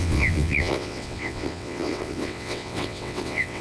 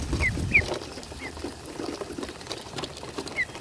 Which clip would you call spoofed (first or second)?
first